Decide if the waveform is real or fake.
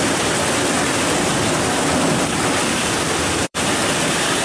fake